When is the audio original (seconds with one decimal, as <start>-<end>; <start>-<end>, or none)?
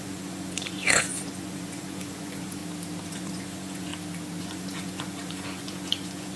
2.6-3.1; 3.9-4.4